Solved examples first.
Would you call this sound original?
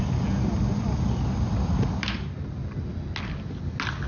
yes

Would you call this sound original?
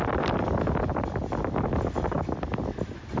yes